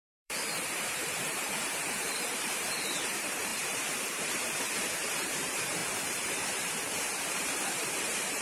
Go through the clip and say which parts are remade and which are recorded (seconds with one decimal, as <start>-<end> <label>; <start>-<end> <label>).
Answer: 0.0-8.4 remade